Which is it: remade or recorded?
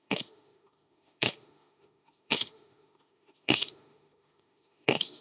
remade